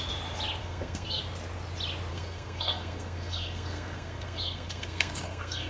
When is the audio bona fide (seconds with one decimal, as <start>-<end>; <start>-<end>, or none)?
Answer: 0.0-0.6; 1.2-2.1